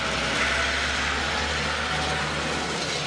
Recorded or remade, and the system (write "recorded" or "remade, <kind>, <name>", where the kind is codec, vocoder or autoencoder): recorded